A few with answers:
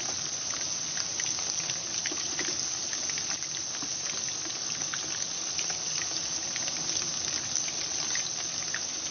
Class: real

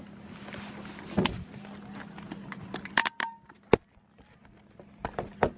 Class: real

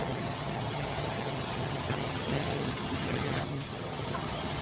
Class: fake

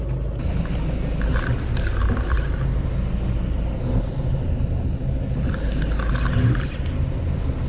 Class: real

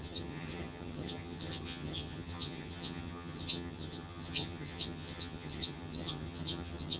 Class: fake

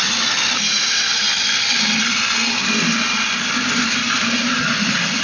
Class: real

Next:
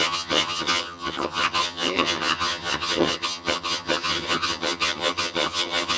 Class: fake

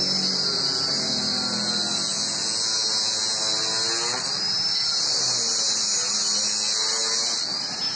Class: real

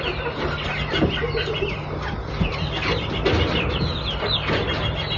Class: real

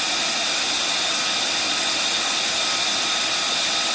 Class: real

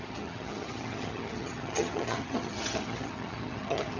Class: fake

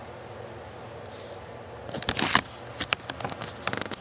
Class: real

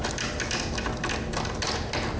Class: real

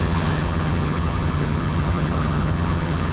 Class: fake